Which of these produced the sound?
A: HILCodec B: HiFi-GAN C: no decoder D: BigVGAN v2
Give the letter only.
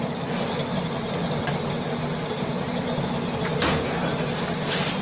C